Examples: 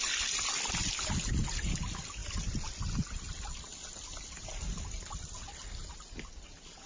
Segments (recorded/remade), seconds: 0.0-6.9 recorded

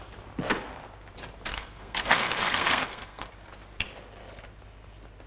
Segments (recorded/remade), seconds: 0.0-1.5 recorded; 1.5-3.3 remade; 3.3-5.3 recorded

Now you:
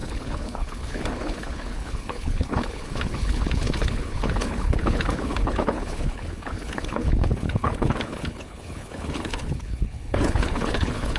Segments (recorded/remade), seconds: 0.0-11.2 remade